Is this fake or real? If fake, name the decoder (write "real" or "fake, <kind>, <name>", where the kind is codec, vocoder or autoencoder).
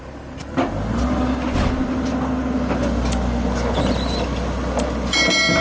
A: real